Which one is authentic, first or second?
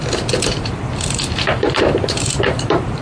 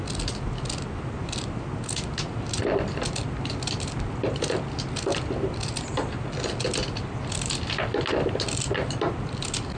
second